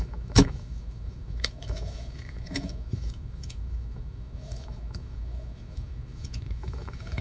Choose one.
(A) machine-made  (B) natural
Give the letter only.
A